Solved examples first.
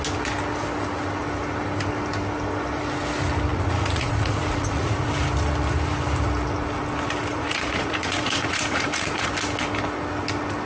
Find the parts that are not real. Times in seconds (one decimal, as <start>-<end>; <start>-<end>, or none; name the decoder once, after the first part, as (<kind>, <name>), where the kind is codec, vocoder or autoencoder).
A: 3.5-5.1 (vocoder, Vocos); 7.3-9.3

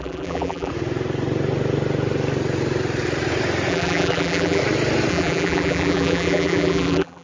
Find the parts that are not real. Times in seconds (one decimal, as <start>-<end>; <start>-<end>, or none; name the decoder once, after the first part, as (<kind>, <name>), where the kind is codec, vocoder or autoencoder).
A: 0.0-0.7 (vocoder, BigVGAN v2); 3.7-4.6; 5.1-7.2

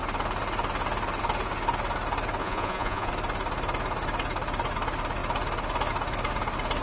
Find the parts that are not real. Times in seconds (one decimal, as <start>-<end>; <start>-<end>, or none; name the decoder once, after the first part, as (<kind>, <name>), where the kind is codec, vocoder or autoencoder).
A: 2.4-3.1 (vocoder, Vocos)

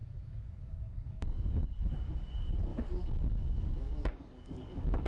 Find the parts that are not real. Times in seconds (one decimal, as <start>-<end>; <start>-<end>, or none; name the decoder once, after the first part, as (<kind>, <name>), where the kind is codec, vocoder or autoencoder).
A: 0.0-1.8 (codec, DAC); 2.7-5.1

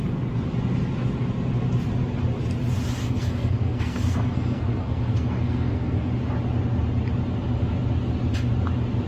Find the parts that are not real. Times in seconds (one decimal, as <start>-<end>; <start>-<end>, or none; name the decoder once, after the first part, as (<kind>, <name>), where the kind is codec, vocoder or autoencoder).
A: 3.0-6.1 (codec, SNAC)

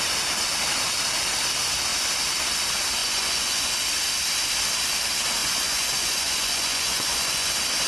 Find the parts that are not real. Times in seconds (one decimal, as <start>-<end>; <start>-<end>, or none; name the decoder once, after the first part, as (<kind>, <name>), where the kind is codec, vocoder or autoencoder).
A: 3.0-3.7 (vocoder, Vocos); 5.4-7.5